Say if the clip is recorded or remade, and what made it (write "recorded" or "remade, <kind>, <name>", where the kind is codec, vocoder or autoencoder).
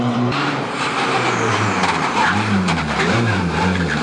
remade, vocoder, BigVGAN v2